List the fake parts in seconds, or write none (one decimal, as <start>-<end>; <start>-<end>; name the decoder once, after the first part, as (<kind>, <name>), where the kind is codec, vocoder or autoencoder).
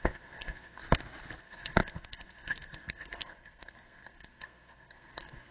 0.0-0.8 (codec, SNAC); 1.4-5.5